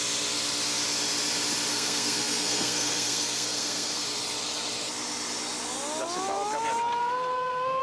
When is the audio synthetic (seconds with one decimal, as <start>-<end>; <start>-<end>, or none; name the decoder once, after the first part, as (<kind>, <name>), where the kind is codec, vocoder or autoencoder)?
1.7-4.0 (codec, SNAC); 7.0-7.8